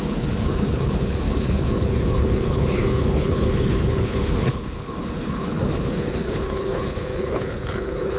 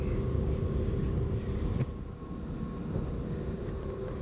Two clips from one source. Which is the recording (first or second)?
second